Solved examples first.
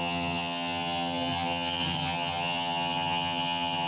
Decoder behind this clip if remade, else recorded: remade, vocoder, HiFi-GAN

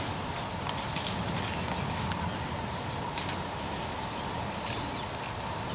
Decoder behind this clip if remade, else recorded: recorded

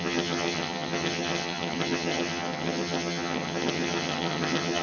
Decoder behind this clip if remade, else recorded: remade, vocoder, HiFi-GAN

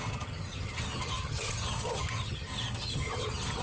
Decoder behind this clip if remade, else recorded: remade, vocoder, HiFi-GAN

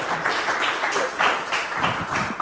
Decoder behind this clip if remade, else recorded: recorded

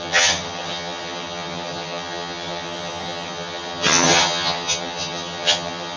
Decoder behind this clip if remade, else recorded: remade, vocoder, HiFi-GAN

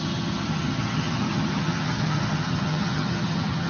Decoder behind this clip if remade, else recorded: remade, vocoder, HiFi-GAN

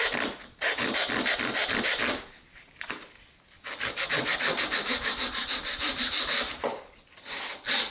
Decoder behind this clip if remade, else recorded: recorded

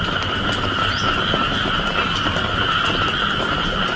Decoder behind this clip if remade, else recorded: recorded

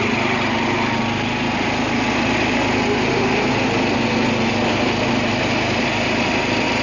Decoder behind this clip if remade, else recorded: recorded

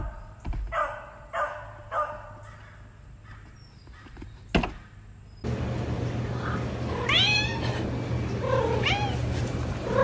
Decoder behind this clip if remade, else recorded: recorded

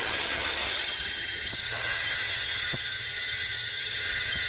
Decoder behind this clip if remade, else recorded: remade, vocoder, HiFi-GAN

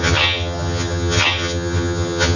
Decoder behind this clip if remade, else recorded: remade, vocoder, HiFi-GAN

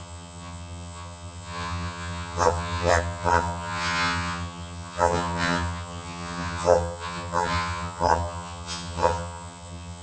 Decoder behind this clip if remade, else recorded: remade, vocoder, HiFi-GAN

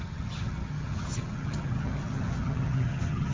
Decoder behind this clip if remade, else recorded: remade, vocoder, HiFi-GAN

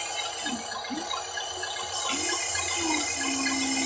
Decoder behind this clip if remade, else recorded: recorded